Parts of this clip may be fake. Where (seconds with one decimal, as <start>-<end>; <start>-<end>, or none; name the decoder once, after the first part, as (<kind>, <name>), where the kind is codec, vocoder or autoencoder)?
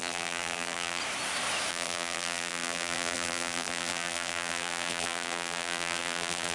0.0-1.0 (vocoder, BigVGAN v2); 1.7-6.5